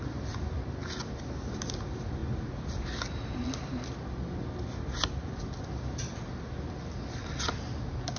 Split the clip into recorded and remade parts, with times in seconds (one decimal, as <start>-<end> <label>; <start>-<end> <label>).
0.0-8.2 recorded